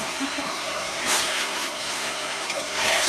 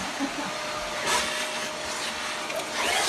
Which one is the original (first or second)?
second